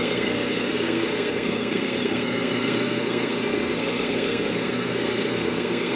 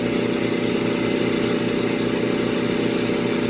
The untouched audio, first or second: second